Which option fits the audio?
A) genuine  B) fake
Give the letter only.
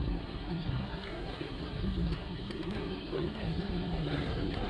B